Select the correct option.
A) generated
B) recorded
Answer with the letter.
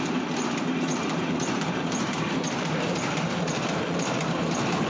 A